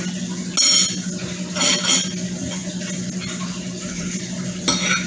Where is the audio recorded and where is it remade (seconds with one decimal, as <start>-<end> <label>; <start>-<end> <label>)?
0.0-5.1 recorded